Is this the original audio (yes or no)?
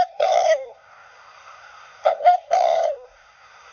no